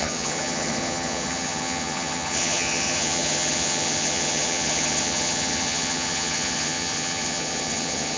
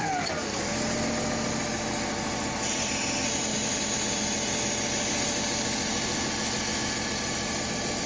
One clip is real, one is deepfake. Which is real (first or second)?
second